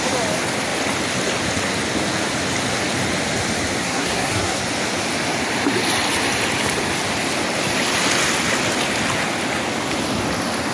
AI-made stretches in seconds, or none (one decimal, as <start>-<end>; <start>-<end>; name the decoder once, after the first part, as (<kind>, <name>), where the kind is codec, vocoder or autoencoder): 3.8-4.6 (codec, SNAC)